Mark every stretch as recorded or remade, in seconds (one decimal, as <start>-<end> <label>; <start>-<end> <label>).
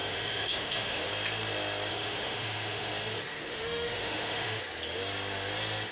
0.0-1.1 remade; 1.1-1.9 recorded; 1.9-2.9 remade; 2.9-3.3 recorded; 3.3-4.6 remade; 4.6-5.9 recorded